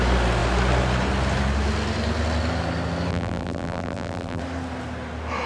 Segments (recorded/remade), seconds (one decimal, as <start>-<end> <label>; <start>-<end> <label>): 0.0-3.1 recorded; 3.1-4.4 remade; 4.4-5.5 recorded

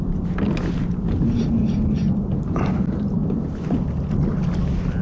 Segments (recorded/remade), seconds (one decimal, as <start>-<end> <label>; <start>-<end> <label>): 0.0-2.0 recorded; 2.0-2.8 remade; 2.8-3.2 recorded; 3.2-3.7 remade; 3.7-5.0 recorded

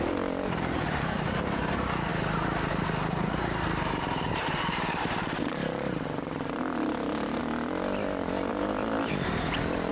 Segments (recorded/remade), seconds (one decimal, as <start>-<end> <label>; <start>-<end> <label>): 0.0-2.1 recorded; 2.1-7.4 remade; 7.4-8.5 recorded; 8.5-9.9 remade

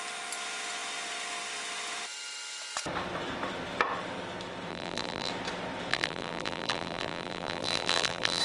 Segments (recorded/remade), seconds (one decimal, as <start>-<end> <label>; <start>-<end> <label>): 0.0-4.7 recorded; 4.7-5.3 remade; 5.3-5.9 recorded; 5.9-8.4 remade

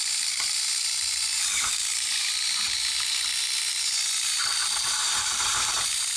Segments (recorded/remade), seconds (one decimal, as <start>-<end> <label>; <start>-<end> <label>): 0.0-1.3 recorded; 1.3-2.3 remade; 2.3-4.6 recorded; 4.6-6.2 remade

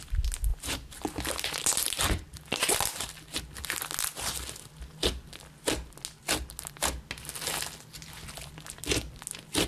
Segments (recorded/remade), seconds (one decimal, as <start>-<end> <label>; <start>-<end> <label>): 0.0-9.7 recorded